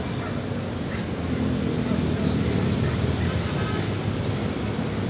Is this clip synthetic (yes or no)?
no